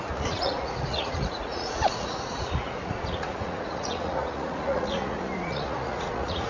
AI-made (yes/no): yes